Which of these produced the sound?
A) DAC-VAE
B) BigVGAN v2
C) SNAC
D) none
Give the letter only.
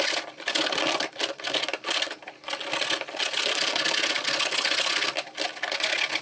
D